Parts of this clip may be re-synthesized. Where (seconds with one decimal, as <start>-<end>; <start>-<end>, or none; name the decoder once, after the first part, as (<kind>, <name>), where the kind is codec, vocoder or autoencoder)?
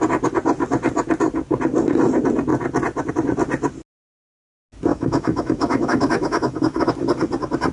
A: 4.9-6.9 (autoencoder, DAC-VAE)